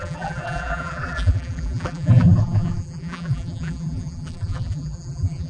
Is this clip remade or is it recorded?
remade